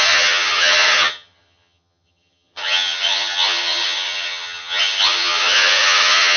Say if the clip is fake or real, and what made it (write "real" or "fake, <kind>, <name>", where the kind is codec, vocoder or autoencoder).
fake, vocoder, HiFi-GAN